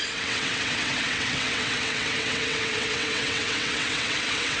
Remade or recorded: remade